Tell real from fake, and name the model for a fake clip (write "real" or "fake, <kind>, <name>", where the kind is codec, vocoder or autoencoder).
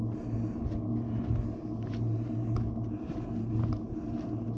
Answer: real